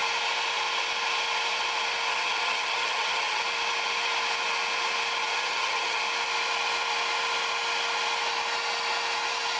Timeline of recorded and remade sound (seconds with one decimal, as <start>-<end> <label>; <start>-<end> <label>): 0.0-2.1 recorded; 2.1-3.4 remade; 3.4-5.3 recorded; 5.3-6.0 remade; 6.0-9.6 recorded